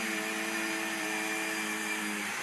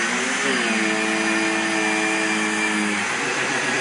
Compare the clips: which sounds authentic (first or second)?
second